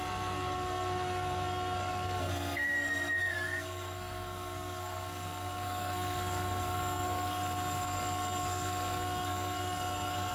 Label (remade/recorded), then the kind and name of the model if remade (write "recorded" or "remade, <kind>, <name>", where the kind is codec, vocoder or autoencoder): remade, codec, SNAC